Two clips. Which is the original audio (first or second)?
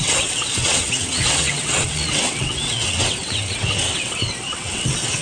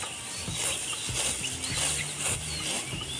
second